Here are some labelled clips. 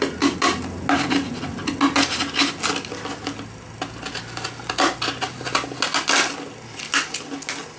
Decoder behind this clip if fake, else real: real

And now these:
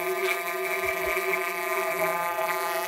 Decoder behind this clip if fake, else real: fake, vocoder, BigVGAN v2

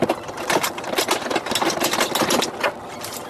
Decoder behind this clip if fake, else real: real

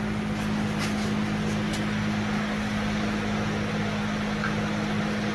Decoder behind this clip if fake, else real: real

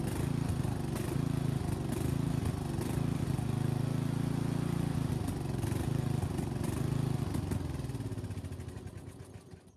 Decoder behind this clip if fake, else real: real